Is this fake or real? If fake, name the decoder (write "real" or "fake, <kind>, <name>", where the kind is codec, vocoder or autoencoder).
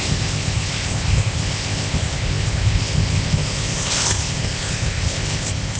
fake, codec, ZipCodec